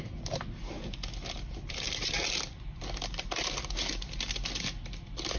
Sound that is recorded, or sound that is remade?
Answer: recorded